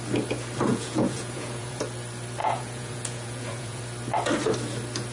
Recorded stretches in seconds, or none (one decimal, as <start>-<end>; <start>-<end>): 0.0-0.7; 1.8-2.4; 3.8-5.1